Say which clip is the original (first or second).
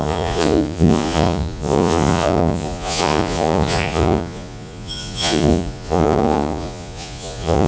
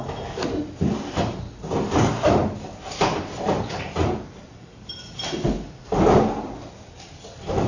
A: second